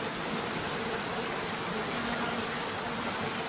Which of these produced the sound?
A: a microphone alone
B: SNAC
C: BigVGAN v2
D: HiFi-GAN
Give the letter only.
A